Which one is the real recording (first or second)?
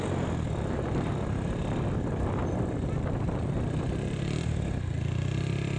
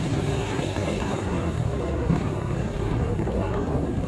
first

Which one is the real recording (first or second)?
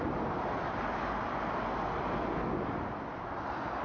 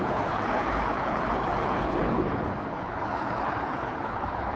first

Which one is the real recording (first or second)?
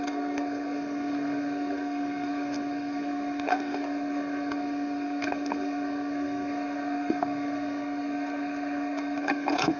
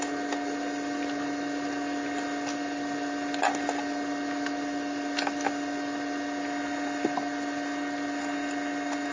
second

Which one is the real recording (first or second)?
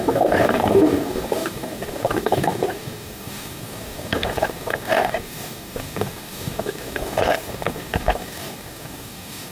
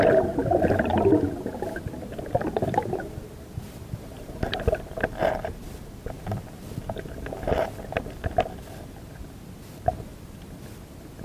second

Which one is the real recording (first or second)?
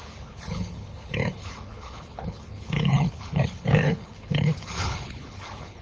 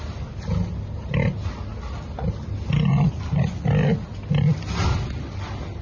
second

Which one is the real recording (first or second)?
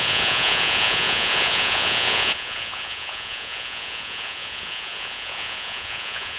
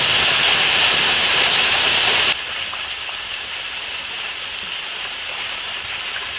second